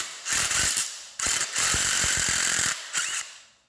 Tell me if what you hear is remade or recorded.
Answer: remade